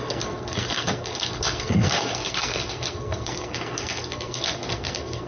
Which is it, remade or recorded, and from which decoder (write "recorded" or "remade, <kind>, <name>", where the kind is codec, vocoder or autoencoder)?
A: remade, codec, SNAC